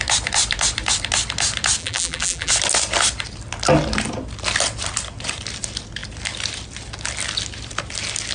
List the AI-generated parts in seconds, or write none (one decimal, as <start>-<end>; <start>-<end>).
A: 1.8-2.5